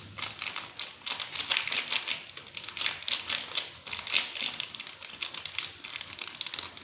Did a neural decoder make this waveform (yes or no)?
no